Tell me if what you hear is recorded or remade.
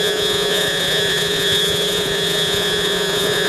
remade